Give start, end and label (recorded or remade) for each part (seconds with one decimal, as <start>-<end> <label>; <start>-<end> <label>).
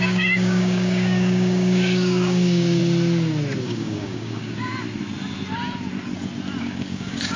0.0-2.8 remade; 2.8-3.6 recorded; 3.6-4.7 remade; 4.7-6.6 recorded; 6.6-7.4 remade